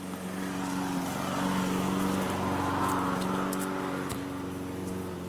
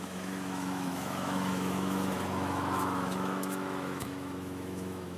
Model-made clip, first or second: second